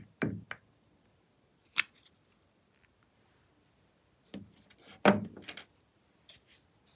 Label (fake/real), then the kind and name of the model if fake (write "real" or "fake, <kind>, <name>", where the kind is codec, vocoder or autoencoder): real